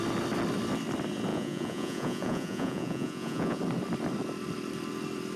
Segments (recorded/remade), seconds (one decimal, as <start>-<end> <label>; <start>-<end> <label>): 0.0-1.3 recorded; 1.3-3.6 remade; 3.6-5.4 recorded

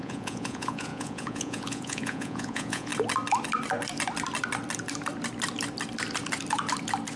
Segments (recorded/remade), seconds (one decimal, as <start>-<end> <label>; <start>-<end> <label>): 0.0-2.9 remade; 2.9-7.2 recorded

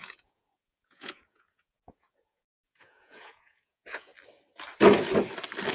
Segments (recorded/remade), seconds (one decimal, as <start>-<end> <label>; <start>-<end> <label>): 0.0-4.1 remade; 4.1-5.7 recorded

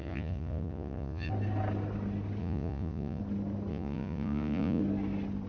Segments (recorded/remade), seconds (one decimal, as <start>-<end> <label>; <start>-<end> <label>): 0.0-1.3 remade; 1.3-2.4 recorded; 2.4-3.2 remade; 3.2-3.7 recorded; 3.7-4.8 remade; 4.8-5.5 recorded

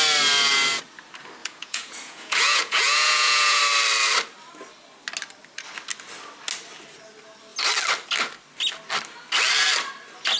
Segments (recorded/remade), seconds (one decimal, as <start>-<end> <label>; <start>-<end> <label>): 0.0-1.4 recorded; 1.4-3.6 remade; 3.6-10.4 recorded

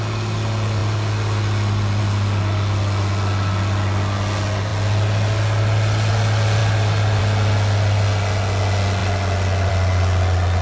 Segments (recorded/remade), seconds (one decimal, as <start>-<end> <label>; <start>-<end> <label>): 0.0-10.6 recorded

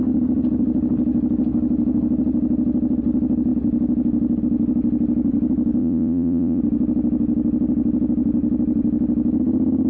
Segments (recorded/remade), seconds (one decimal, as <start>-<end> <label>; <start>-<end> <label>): 0.0-5.8 recorded; 5.8-6.6 remade; 6.6-9.9 recorded